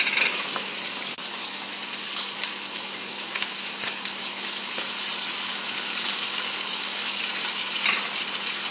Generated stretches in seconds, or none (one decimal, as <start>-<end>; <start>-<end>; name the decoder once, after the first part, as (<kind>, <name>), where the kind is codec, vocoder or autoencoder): 1.2-4.7 (codec, DAC); 5.5-7.2